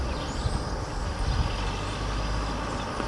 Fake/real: real